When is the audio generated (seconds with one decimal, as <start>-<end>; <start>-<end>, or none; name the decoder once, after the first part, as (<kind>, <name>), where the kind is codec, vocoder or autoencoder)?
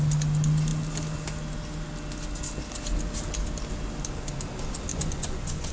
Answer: 4.9-5.7 (vocoder, Vocos)